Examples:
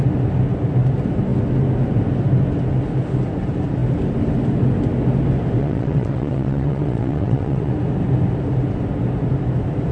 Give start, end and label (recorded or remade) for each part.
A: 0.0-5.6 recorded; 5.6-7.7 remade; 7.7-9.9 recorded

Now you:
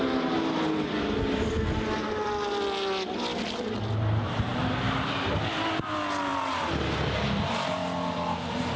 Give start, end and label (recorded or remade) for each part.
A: 0.0-8.8 recorded